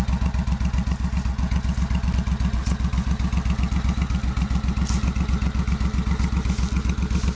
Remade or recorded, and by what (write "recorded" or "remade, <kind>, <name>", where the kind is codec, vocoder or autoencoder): recorded